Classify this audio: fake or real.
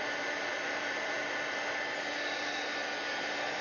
real